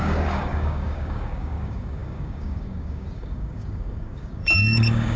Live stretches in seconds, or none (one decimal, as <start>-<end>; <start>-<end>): none